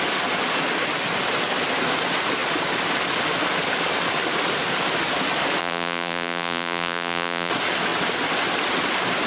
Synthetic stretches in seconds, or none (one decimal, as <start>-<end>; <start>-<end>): 5.6-7.5